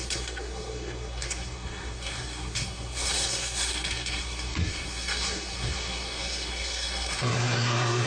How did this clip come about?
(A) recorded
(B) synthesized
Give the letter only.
B